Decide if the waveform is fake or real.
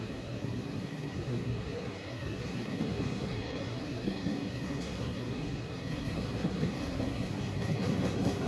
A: fake